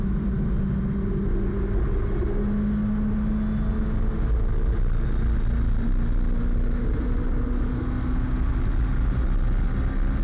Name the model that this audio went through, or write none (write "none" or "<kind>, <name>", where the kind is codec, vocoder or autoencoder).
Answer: none